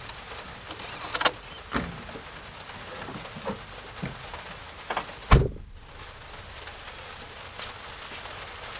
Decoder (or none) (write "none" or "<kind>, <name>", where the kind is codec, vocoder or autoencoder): none